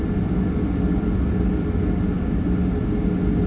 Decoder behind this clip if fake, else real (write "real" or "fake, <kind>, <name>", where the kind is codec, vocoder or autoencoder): real